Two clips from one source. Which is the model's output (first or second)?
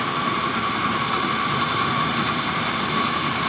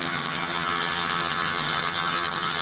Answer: second